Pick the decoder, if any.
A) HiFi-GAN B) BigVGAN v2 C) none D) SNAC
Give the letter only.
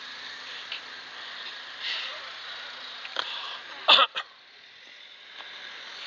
C